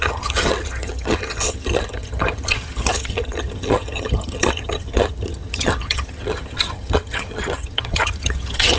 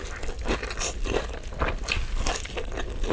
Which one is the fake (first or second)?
first